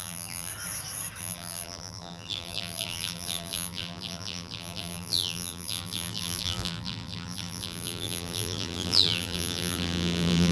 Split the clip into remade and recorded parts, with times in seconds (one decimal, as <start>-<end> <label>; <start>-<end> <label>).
0.0-0.5 remade; 0.5-1.2 recorded; 1.2-10.5 remade